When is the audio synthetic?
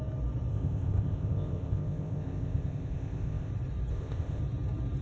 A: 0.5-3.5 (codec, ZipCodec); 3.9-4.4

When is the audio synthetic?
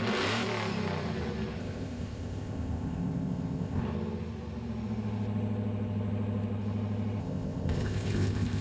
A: 1.6-3.8 (codec, ZipCodec); 7.2-8.6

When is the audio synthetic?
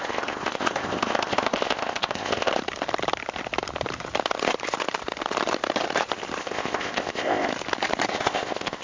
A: 0.0-2.5 (codec, ZipCodec); 6.4-7.5; 8.1-8.8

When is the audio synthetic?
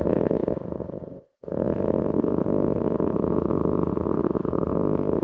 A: 0.0-5.2 (codec, ZipCodec)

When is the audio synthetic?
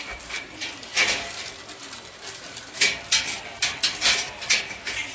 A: none